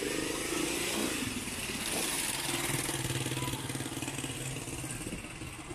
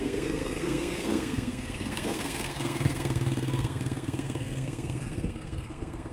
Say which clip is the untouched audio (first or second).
first